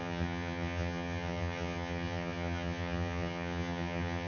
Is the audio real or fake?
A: fake